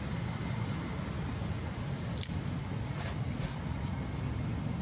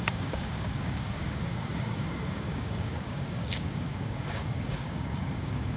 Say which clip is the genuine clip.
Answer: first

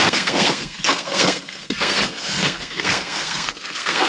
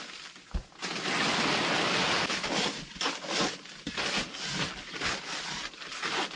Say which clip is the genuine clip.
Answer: second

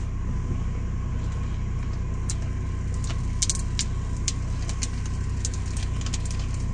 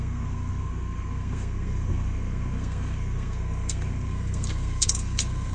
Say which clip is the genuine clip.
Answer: first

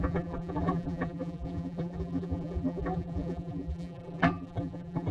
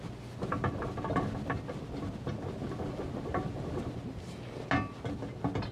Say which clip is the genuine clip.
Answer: second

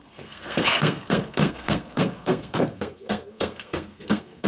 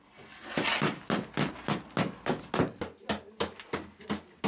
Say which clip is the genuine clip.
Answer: second